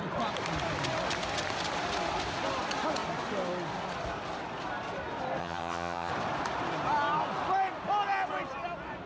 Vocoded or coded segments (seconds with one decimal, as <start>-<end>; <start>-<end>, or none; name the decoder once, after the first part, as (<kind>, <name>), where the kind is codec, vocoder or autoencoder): 5.4-6.1 (vocoder, HiFi-GAN)